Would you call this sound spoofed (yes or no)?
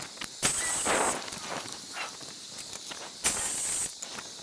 no